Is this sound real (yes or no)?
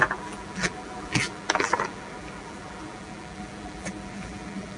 no